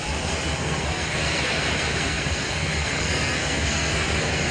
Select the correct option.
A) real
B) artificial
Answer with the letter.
B